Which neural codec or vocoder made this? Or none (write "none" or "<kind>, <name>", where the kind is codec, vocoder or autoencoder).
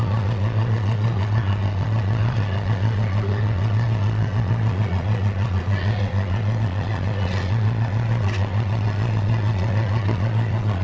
vocoder, Vocos